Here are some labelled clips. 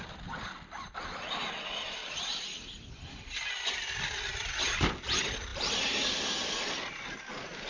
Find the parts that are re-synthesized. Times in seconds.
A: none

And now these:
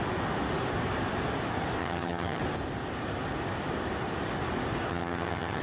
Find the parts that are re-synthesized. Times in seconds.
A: 1.8-2.4 (vocoder, HiFi-GAN); 4.9-5.6

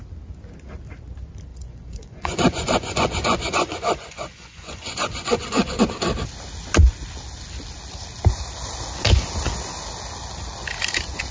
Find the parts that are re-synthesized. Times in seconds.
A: 1.5-5.8 (vocoder, Vocos)

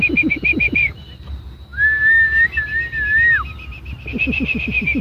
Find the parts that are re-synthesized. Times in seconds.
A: none

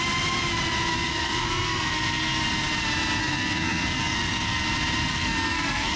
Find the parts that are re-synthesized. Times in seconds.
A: 0.9-2.4 (codec, SNAC); 3.2-4.6; 5.1-6.0

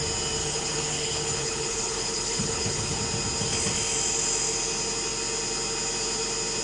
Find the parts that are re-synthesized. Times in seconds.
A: 0.4-3.0 (codec, HILCodec)